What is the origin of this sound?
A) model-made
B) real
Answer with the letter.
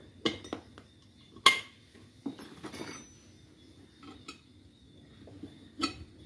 B